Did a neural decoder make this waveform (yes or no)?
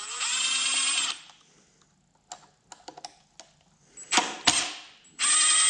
no